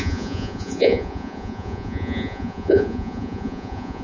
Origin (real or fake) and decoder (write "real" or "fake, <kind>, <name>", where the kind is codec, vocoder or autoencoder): fake, vocoder, Vocos